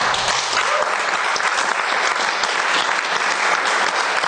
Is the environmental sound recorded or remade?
recorded